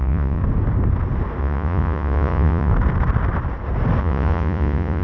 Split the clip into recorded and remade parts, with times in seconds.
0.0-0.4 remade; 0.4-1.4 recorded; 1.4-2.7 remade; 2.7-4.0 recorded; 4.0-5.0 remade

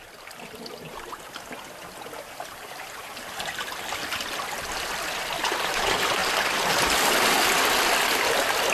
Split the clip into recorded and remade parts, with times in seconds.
0.0-8.7 recorded

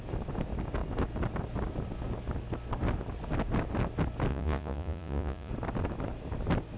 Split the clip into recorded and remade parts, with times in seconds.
0.0-4.3 recorded; 4.3-5.5 remade; 5.5-6.8 recorded

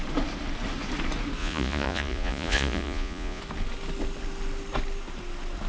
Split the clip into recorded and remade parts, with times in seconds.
0.0-1.4 recorded; 1.4-3.4 remade; 3.4-5.7 recorded